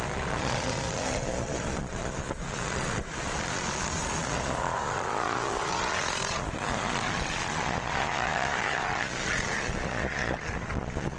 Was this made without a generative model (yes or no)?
no